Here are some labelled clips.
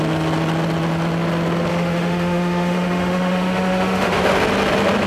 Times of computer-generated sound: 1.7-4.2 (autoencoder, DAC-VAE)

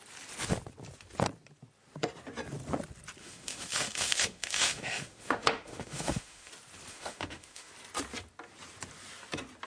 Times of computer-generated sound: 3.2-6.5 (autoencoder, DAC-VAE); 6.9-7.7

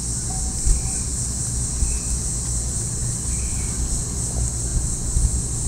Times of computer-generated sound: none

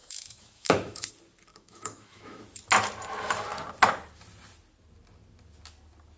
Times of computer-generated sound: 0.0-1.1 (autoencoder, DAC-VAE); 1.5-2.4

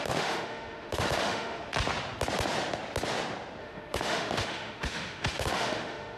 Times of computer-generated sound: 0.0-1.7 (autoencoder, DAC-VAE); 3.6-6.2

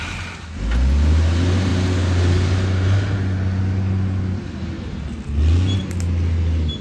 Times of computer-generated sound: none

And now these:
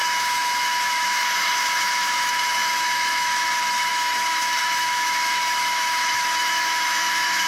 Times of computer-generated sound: 0.0-7.5 (autoencoder, DAC-VAE)